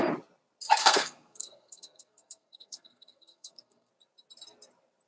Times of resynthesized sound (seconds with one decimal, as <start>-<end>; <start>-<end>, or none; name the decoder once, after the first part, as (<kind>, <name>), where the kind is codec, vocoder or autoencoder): 0.8-3.9 (codec, SNAC)